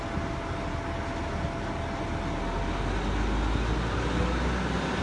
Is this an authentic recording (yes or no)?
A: yes